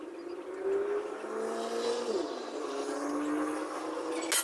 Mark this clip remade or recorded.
recorded